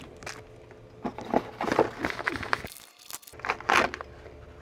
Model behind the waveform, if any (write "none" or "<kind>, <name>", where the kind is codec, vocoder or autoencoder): none